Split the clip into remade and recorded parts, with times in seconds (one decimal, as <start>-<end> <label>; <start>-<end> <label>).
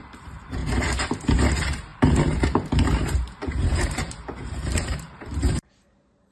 0.0-0.6 remade; 0.6-1.2 recorded; 1.2-6.3 remade